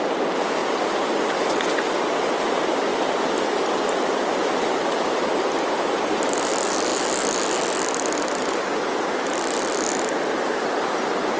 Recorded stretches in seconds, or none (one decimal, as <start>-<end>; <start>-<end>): 0.0-2.9; 6.4-11.4